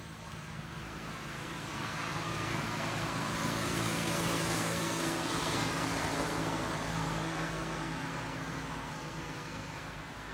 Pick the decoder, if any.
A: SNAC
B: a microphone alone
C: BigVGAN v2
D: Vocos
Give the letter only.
A